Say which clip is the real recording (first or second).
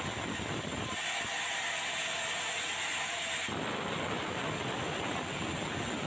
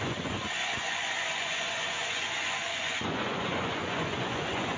first